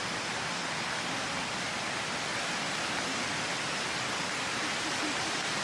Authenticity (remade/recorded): recorded